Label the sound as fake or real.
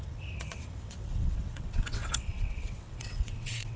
fake